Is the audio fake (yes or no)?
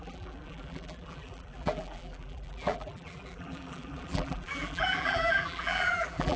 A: yes